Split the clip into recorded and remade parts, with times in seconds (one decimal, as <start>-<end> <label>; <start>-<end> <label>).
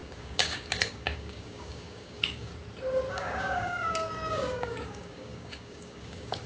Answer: 0.0-2.5 remade; 2.5-3.1 recorded; 3.1-6.5 remade